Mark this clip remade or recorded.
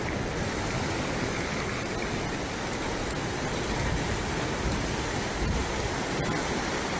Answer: recorded